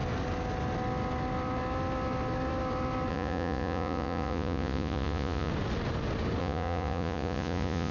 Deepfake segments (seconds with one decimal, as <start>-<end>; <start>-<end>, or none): 3.1-5.5; 6.4-7.9